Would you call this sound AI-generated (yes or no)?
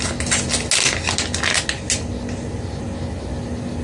no